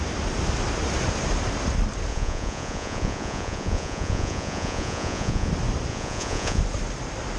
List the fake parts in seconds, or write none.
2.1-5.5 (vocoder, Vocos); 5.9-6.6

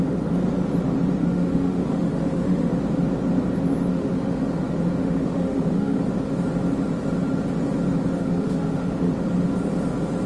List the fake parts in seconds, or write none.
1.2-2.7 (autoencoder, DAC-VAE); 3.9-4.4; 5.0-6.0; 8.1-9.1

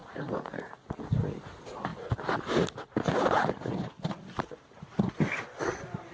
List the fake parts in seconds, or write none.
0.0-0.9 (vocoder, Vocos)